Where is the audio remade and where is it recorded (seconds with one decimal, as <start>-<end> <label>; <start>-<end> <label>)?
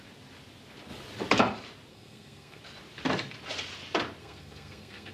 0.0-1.9 recorded; 1.9-2.6 remade; 2.6-4.2 recorded; 4.2-5.1 remade